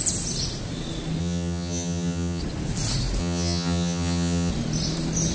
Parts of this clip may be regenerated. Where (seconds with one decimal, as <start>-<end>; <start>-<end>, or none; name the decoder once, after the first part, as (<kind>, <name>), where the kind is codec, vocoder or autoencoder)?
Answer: 1.2-2.4 (vocoder, HiFi-GAN); 3.2-4.5